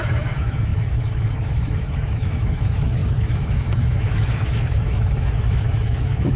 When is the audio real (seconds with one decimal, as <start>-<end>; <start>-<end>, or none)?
none

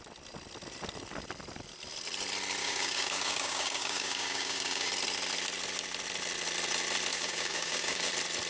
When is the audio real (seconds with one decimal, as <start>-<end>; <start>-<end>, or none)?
0.0-2.6; 4.9-7.1; 8.1-8.5

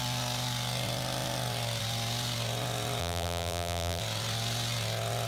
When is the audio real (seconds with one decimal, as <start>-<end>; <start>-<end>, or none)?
0.0-3.0; 4.0-5.3

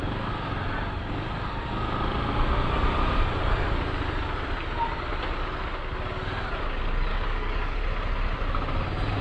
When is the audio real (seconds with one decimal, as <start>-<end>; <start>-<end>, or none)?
0.0-7.1; 7.8-9.2

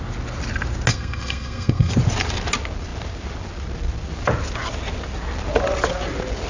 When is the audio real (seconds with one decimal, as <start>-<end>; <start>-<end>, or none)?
0.0-0.9; 1.9-6.5

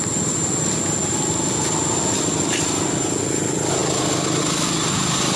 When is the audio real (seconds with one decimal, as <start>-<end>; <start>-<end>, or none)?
0.0-5.4

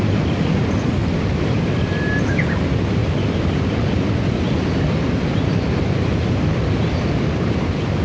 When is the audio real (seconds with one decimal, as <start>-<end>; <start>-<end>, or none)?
0.0-8.0